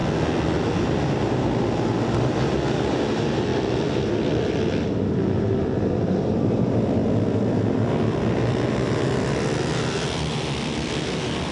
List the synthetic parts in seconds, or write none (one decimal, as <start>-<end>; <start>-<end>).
2.2-7.0; 7.8-11.5